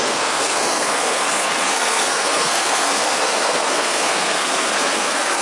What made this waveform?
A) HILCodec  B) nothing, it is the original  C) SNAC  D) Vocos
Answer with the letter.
C